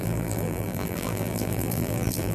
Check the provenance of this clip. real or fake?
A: fake